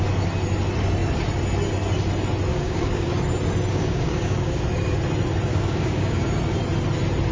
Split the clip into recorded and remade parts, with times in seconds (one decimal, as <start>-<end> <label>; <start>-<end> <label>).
0.0-2.5 recorded; 2.5-3.1 remade; 3.1-3.7 recorded; 3.7-4.6 remade; 4.6-5.5 recorded; 5.5-6.2 remade; 6.2-7.3 recorded